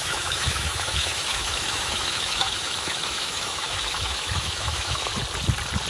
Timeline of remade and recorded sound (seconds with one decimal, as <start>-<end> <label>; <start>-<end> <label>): 0.0-5.1 remade; 5.1-5.9 recorded